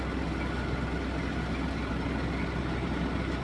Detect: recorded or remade recorded